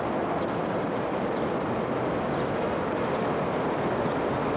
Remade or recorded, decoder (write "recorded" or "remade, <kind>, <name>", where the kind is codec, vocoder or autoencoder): recorded